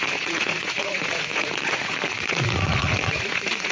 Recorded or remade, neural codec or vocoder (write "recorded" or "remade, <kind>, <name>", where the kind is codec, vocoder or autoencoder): remade, vocoder, Vocos